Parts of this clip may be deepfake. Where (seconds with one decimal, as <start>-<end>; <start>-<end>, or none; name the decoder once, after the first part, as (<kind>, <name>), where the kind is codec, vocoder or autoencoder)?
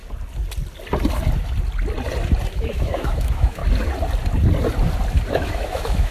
2.5-3.6 (autoencoder, DAC-VAE); 5.3-6.1